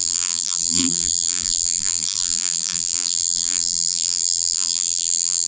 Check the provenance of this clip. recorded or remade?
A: remade